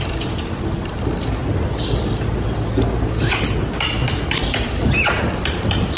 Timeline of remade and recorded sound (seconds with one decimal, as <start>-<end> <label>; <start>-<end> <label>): 0.0-6.0 recorded